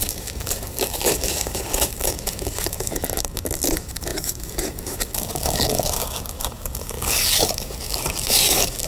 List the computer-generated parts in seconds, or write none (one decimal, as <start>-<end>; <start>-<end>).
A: 0.0-8.9